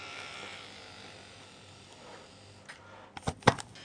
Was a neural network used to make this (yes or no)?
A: no